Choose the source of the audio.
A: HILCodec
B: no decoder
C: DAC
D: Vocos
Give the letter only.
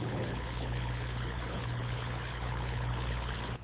A